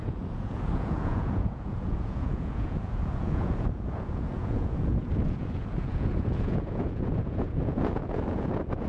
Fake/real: fake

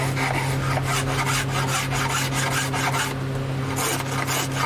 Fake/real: real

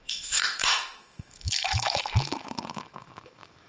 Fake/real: fake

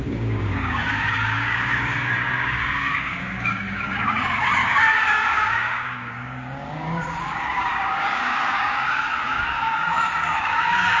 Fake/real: fake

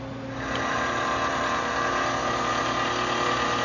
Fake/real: real